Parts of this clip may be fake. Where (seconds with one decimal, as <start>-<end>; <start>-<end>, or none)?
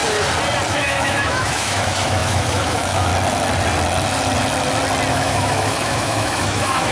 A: 0.7-3.1; 5.1-6.9